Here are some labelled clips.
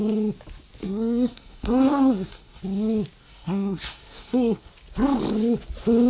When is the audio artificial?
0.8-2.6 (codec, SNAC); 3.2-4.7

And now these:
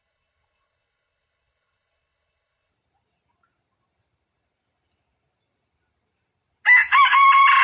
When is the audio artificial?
0.0-2.7 (codec, HILCodec)

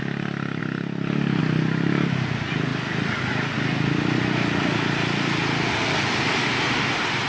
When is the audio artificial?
none

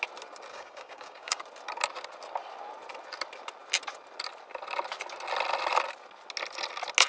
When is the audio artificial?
0.5-1.4 (codec, DAC)